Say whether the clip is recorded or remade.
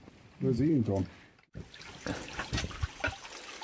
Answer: remade